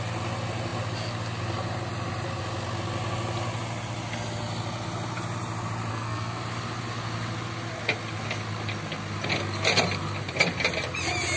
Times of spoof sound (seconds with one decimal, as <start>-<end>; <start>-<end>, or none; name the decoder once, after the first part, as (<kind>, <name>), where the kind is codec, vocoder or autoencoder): 5.9-6.4 (codec, SNAC)